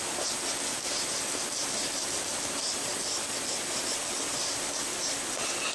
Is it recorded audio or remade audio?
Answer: recorded